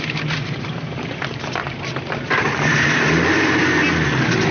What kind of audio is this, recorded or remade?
recorded